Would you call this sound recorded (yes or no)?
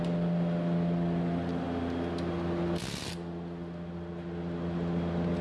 yes